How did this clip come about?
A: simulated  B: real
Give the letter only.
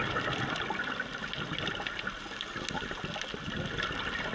B